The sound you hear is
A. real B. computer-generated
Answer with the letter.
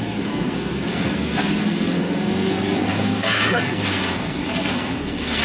B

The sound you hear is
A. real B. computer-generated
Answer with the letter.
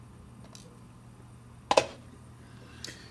A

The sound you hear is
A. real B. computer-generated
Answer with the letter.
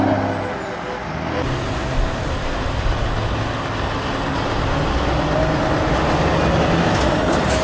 A